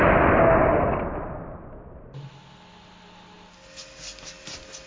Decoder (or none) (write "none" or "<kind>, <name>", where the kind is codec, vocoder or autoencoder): none